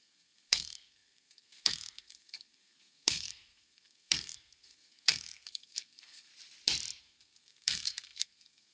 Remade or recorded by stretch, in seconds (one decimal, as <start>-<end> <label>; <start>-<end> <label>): 0.0-6.3 remade; 6.3-7.0 recorded; 7.0-8.7 remade